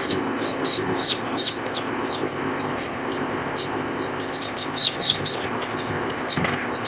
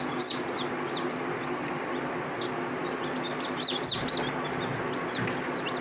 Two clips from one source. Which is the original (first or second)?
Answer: second